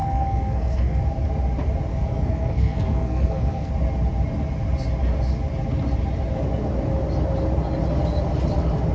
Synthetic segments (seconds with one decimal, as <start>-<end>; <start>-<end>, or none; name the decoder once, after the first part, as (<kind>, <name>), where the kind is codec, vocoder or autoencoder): 0.0-1.0 (codec, SNAC); 1.9-3.7